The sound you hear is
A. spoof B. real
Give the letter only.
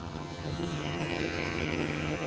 A